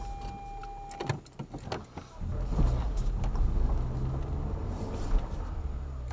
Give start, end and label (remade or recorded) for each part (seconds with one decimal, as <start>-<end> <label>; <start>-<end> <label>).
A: 0.0-4.6 recorded; 4.6-6.1 remade